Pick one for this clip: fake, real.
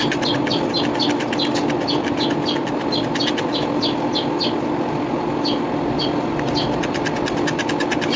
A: real